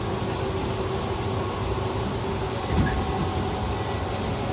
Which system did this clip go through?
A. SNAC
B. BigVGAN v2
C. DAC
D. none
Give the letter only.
D